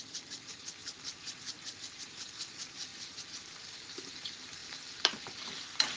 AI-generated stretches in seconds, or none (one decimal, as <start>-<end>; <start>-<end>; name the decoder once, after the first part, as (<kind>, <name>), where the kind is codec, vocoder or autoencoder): 0.0-6.0 (vocoder, BigVGAN v2)